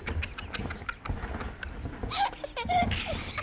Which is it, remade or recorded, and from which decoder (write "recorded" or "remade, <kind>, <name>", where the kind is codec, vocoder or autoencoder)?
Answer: recorded